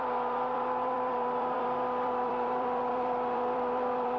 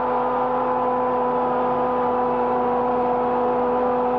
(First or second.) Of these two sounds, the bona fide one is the second